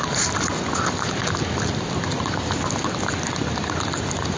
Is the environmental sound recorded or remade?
recorded